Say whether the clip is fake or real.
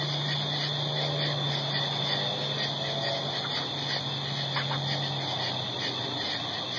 real